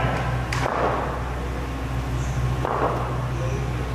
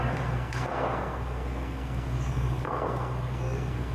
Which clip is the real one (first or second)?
first